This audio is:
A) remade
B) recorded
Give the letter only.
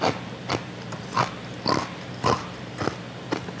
B